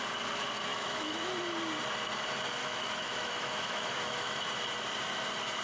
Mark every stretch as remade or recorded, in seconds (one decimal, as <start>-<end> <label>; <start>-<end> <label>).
0.0-0.7 recorded; 0.7-1.3 remade; 1.3-2.6 recorded; 2.6-4.5 remade; 4.5-5.6 recorded